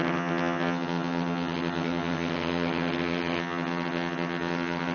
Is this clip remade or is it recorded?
remade